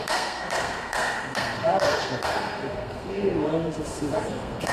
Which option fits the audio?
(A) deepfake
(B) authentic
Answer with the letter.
A